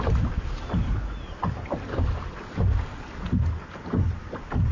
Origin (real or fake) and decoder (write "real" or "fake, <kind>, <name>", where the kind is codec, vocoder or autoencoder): real